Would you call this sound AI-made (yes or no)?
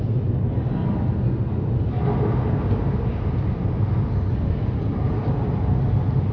no